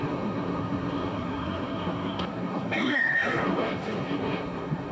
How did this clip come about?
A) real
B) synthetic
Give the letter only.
B